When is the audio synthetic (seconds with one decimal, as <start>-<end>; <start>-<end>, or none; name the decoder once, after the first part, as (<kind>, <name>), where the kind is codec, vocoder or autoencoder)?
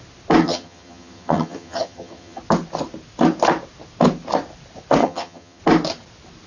0.4-2.4 (vocoder, HiFi-GAN); 5.0-5.6